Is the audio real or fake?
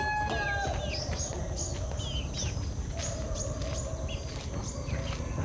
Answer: real